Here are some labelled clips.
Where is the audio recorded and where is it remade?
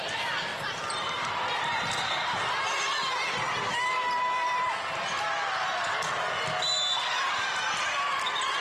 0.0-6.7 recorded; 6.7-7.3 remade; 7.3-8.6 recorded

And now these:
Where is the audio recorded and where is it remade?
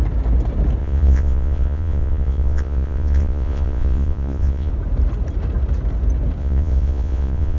0.0-0.8 recorded; 0.8-4.7 remade; 4.7-6.4 recorded; 6.4-7.6 remade